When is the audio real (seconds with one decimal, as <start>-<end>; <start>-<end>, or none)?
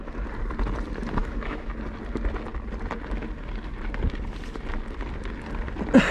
0.0-1.2; 1.7-6.1